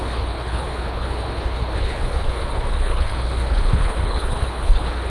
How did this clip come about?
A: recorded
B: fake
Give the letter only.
B